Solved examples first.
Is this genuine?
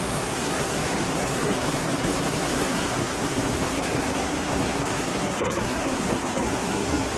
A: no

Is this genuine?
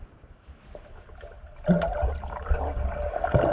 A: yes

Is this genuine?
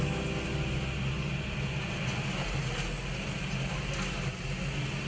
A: yes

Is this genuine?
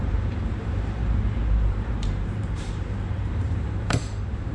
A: no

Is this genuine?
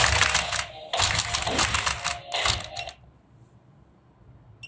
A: yes